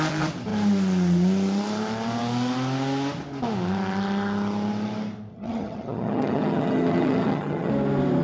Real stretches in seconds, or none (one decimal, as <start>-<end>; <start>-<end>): 0.0-5.3; 7.7-8.2